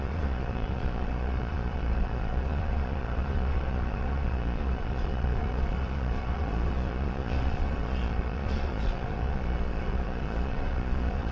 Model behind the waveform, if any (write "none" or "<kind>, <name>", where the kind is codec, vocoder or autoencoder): vocoder, Vocos